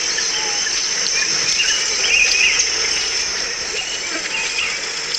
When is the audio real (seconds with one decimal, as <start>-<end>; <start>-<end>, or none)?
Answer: 0.0-0.8; 2.0-3.3; 4.2-5.2